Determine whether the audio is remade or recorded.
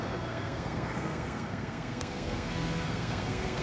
remade